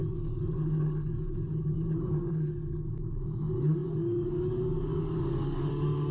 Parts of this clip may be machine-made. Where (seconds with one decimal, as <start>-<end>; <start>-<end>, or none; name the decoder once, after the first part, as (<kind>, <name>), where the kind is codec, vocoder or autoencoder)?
0.0-6.1 (codec, DAC)